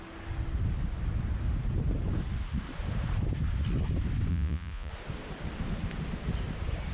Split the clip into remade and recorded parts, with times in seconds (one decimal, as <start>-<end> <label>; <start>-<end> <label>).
0.0-4.3 recorded; 4.3-4.9 remade; 4.9-6.9 recorded